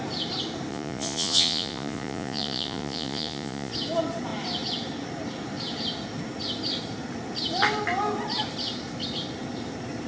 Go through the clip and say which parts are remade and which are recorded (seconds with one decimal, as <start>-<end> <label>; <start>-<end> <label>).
0.0-0.7 recorded; 0.7-3.7 remade; 3.7-10.1 recorded